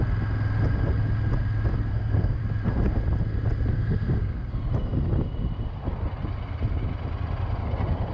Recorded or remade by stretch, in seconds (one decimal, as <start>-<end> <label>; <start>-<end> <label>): 0.0-1.9 recorded; 1.9-2.4 remade; 2.4-3.7 recorded; 3.7-4.5 remade; 4.5-8.1 recorded

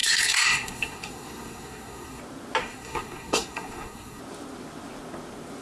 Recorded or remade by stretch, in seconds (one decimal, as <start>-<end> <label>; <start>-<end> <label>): 0.0-2.2 remade; 2.2-2.6 recorded; 2.6-4.2 remade; 4.2-5.6 recorded